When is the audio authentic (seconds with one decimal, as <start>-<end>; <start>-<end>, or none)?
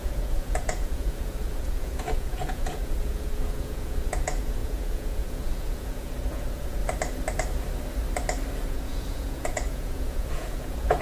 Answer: 6.8-8.7